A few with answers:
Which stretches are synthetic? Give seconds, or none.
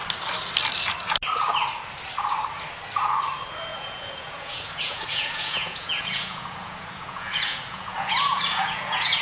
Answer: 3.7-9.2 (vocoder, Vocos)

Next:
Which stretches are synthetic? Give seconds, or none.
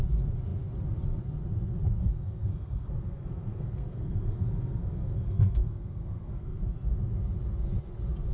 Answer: 2.0-6.6 (codec, SNAC)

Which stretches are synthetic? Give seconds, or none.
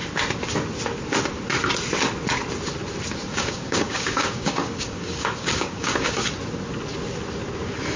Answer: 3.3-6.3 (codec, DAC)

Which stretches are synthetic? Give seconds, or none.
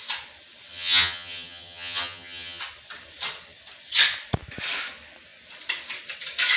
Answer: 0.7-2.6 (vocoder, HiFi-GAN)